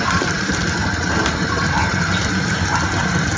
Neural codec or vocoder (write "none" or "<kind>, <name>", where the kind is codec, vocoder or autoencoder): vocoder, BigVGAN v2